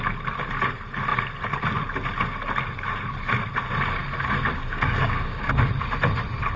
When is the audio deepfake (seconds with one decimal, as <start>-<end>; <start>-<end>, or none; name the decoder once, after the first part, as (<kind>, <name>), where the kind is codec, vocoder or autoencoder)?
4.6-5.5 (codec, DAC)